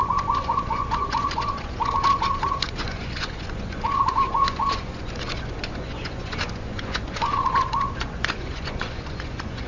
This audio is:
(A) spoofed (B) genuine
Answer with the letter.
A